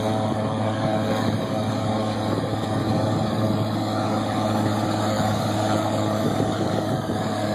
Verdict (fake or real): fake